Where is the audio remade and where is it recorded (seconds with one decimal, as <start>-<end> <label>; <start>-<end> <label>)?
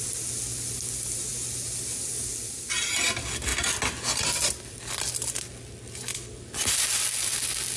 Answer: 0.0-7.8 recorded